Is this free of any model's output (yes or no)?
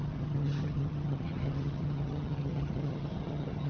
no